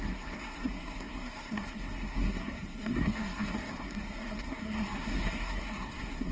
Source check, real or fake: fake